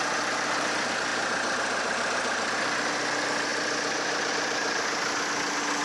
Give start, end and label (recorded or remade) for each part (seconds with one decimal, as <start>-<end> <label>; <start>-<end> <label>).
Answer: 0.0-5.8 recorded